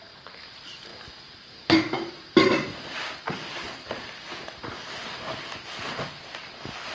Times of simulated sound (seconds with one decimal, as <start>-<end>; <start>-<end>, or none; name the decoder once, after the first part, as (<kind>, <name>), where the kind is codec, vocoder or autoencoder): none